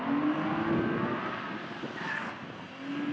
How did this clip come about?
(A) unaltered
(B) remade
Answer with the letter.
A